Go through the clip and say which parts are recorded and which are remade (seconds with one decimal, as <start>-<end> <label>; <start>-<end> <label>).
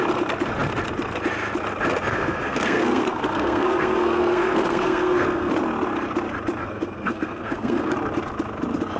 0.0-2.1 recorded; 2.1-5.5 remade; 5.5-6.6 recorded; 6.6-7.9 remade; 7.9-9.0 recorded